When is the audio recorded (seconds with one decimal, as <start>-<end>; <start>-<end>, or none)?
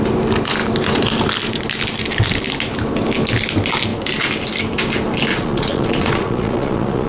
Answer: 0.0-5.3